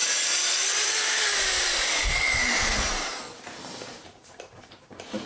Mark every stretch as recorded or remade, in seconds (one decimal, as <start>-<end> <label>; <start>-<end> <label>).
0.0-3.2 remade; 3.2-3.9 recorded; 3.9-5.3 remade